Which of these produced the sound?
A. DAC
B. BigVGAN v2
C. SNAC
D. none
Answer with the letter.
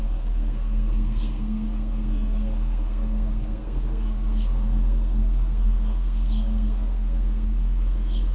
C